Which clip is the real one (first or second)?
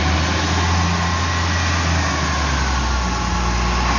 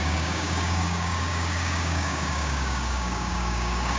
first